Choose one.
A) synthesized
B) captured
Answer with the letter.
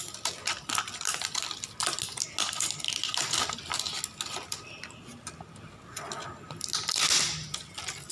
B